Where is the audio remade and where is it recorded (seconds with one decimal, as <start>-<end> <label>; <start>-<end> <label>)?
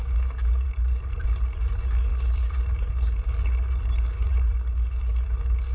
0.0-1.0 remade; 1.0-2.1 recorded; 2.1-2.9 remade; 2.9-4.2 recorded; 4.2-4.8 remade; 4.8-5.7 recorded